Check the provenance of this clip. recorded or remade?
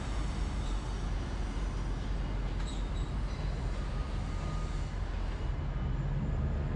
recorded